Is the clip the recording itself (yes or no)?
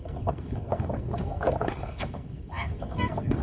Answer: no